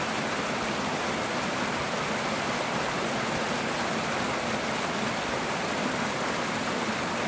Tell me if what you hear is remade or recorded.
recorded